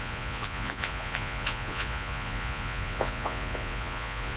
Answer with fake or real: fake